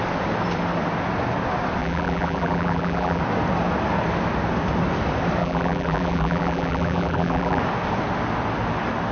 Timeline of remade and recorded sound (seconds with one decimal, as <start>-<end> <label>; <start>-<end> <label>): 0.0-1.8 recorded; 1.8-3.2 remade; 3.2-5.4 recorded; 5.4-7.6 remade; 7.6-9.1 recorded